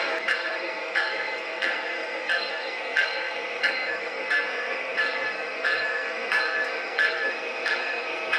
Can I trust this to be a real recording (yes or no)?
no